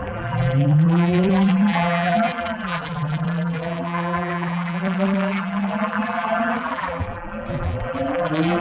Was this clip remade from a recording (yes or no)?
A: yes